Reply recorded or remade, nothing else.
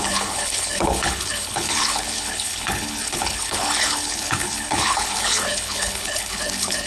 remade